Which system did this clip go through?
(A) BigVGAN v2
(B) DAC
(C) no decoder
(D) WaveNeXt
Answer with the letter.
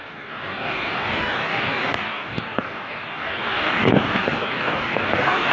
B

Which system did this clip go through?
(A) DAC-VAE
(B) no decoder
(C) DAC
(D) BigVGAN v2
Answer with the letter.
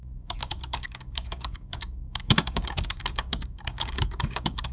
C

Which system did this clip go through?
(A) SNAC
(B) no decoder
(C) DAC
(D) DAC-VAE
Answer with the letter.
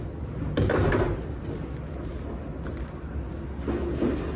B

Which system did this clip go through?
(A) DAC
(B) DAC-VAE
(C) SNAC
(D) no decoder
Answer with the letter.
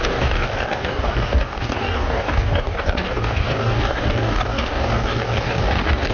A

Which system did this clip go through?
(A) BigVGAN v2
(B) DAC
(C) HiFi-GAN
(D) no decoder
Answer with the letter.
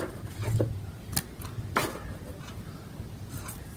D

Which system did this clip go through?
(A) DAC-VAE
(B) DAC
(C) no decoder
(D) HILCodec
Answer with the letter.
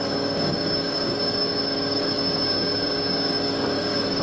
B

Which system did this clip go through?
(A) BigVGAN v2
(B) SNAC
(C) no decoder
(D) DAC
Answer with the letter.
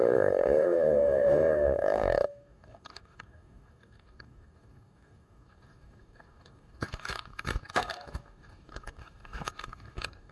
D